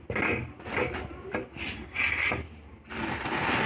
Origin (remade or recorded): recorded